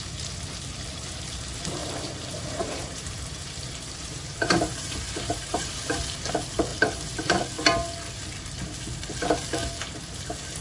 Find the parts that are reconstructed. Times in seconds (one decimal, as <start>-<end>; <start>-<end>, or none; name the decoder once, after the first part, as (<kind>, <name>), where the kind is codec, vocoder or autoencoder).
1.8-6.3 (vocoder, BigVGAN v2)